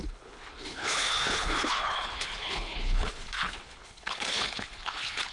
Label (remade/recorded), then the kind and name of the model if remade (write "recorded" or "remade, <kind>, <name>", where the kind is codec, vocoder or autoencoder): remade, codec, HILCodec